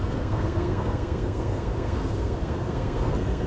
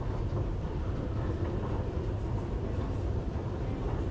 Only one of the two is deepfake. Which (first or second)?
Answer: first